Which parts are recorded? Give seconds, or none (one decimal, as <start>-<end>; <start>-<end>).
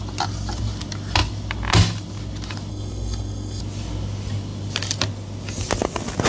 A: 0.0-2.7; 3.6-6.3